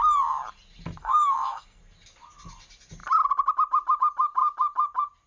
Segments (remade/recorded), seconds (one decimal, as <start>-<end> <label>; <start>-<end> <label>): 0.0-1.0 recorded; 1.0-1.8 remade; 1.8-5.3 recorded